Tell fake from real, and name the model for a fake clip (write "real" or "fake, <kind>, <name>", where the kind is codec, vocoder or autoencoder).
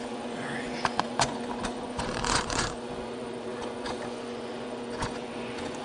fake, vocoder, Vocos